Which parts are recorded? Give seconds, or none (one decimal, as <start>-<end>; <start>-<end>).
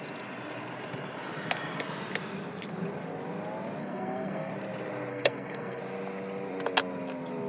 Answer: 0.0-3.8; 4.5-5.1; 5.8-7.5